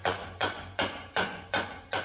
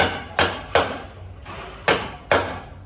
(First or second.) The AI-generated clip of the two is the first